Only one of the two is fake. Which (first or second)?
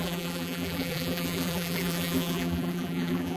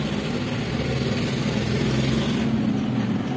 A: first